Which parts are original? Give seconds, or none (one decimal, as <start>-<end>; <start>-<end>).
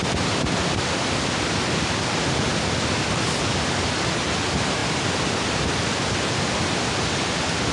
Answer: 0.0-7.7